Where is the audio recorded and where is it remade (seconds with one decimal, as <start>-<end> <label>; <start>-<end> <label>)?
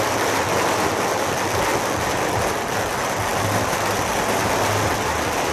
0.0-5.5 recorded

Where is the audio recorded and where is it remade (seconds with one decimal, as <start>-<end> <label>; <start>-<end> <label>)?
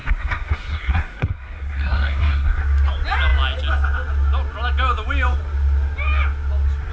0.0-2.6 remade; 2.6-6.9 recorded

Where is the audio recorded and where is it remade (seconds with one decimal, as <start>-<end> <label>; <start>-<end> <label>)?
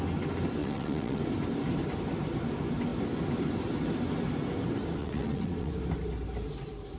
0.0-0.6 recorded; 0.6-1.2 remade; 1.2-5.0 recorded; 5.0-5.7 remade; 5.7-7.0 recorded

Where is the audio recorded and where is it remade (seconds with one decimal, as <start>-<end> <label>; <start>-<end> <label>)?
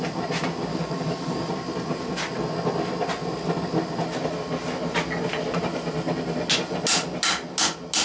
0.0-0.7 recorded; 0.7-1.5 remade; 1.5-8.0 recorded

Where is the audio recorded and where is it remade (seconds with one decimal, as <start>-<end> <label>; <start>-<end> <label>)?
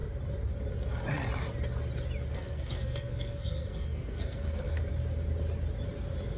0.0-2.3 recorded; 2.3-4.8 remade; 4.8-6.4 recorded